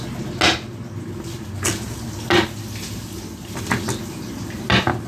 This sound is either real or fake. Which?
real